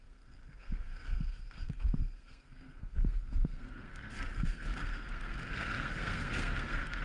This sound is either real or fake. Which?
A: fake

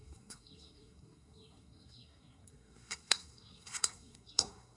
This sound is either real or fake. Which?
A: fake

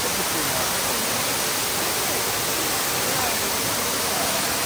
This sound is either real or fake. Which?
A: real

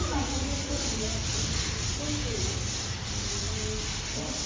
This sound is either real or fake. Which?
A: real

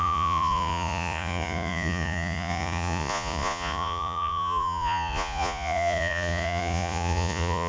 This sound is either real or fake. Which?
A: fake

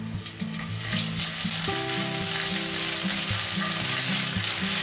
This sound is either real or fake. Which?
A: real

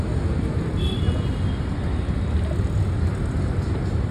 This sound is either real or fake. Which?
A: real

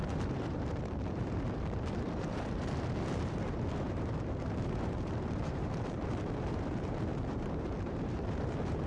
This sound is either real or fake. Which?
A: fake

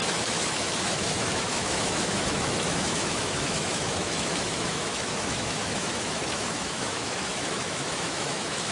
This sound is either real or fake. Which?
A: fake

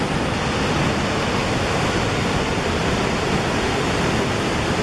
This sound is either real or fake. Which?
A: real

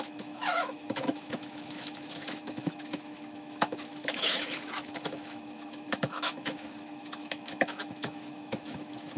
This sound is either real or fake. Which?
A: fake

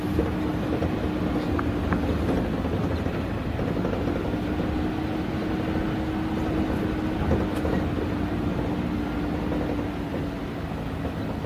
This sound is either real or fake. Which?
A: real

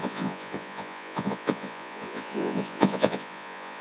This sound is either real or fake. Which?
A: fake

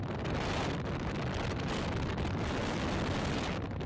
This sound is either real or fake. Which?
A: real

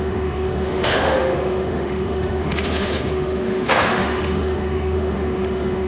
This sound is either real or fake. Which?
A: fake